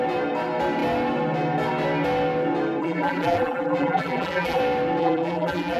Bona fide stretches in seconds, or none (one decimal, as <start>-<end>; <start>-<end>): 0.0-2.8; 4.6-5.0